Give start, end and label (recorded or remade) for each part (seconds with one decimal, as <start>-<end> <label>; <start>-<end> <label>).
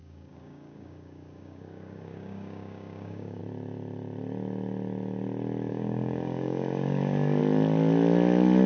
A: 0.0-3.4 remade; 3.4-5.7 recorded; 5.7-7.4 remade; 7.4-8.7 recorded